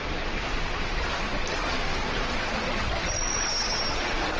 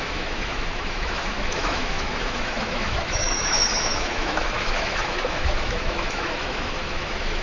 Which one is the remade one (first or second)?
second